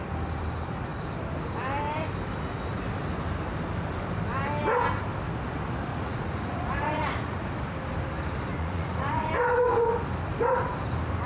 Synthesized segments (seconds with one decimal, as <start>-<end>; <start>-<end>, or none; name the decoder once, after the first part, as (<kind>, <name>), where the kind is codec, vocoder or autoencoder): 5.9-7.5 (vocoder, Vocos); 8.5-9.3

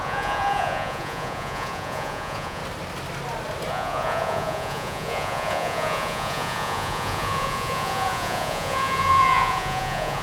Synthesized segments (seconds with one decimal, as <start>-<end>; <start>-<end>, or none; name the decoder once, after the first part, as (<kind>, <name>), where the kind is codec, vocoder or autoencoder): 0.0-2.6 (vocoder, Vocos); 3.7-10.2

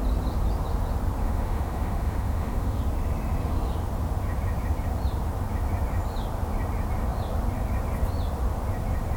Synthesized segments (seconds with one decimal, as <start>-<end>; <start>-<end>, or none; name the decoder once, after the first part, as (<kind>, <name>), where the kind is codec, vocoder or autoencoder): 1.2-2.8 (autoencoder, DAC-VAE)

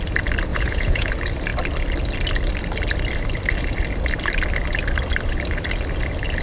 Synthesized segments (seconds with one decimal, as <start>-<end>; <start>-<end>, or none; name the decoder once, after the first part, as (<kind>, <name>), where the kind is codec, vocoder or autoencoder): 0.5-1.1 (vocoder, Vocos)

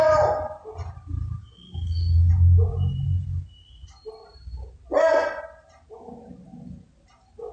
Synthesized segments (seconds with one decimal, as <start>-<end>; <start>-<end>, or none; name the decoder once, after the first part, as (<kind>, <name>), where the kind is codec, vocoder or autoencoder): 1.4-2.3 (codec, DAC)

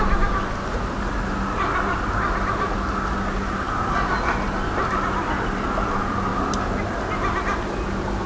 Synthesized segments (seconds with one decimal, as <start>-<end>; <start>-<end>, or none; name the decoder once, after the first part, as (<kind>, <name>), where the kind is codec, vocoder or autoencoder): none